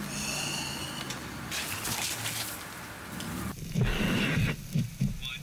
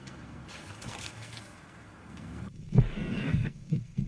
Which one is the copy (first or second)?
second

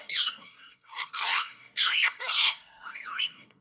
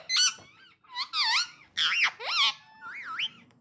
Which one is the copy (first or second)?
first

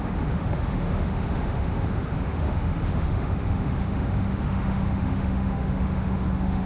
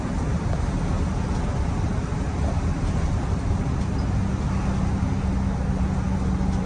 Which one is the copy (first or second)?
first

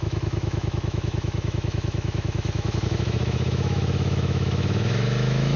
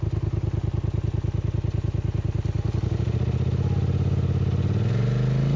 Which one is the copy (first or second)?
first